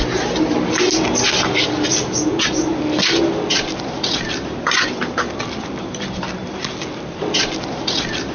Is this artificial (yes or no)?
no